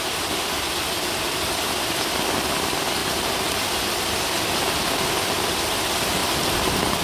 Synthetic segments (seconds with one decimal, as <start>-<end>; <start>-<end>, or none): 6.2-7.0